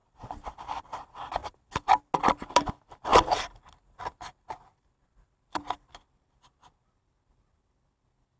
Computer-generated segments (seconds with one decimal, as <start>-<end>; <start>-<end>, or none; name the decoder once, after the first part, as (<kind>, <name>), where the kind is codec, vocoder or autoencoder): none